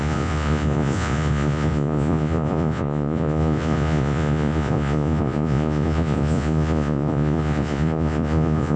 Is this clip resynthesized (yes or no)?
yes